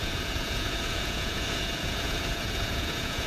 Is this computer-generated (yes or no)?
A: yes